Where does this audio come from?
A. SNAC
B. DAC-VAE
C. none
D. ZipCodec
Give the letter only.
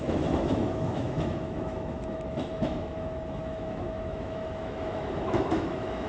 B